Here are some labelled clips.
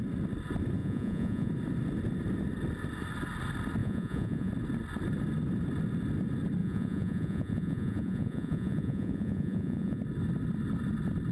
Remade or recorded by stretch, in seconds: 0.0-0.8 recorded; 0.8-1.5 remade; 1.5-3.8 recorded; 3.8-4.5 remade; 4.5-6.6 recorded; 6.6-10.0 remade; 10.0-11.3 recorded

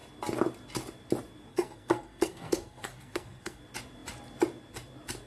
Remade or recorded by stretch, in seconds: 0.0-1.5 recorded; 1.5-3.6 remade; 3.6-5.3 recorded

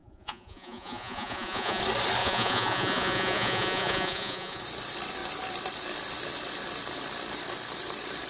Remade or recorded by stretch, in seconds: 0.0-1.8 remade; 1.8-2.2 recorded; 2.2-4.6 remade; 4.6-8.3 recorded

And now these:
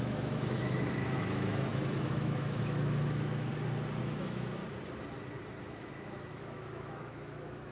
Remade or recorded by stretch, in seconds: 0.0-3.5 remade; 3.5-4.0 recorded; 4.0-4.6 remade; 4.6-5.6 recorded; 5.6-7.7 remade

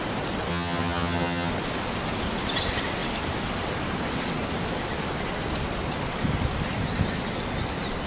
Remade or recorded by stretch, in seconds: 0.0-0.5 recorded; 0.5-1.5 remade; 1.5-8.1 recorded